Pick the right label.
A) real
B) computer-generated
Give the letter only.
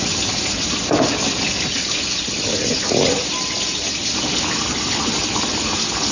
A